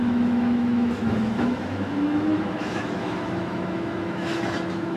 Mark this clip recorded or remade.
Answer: remade